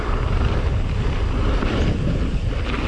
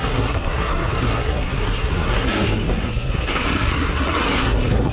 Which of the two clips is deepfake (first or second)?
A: second